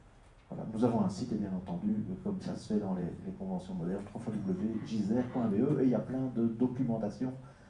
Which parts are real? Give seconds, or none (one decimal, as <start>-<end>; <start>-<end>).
0.0-0.5; 4.1-4.7; 5.5-7.7